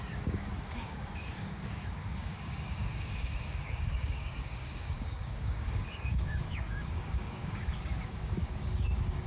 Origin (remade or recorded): remade